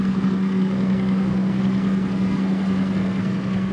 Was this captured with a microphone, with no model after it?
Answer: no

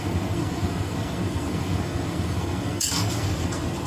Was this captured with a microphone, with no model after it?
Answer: no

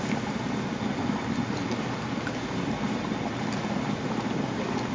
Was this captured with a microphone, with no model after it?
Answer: yes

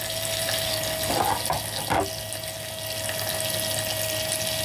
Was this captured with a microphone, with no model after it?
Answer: yes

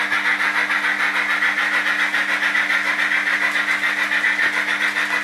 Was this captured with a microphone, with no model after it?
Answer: yes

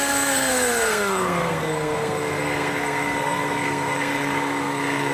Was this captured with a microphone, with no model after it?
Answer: no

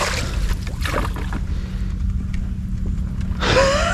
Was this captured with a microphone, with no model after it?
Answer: yes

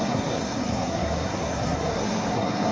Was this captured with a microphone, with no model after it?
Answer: no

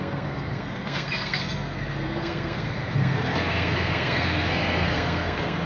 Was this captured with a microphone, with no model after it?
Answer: no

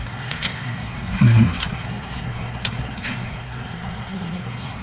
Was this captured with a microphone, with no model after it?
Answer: no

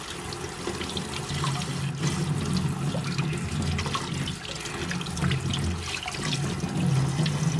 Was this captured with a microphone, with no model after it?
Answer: yes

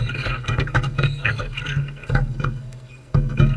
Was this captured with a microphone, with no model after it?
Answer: no